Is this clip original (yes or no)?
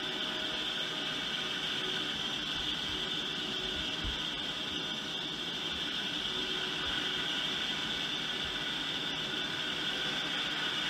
yes